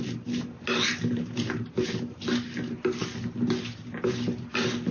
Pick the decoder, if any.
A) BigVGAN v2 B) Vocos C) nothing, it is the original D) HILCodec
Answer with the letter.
C